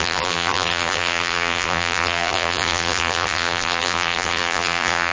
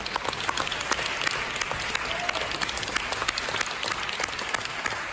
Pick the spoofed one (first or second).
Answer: first